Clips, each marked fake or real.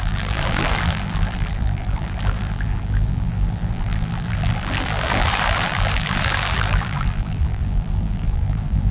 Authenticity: fake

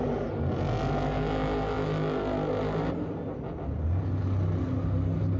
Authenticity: real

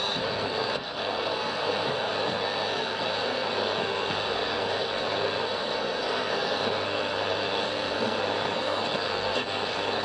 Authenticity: fake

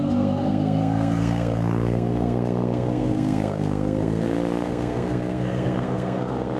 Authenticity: fake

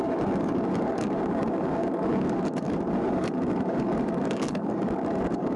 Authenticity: fake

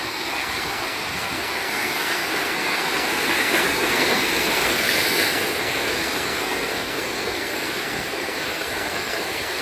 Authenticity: fake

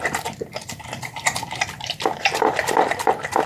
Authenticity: fake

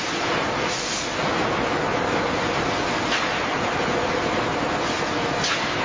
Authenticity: real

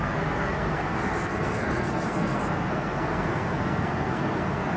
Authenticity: fake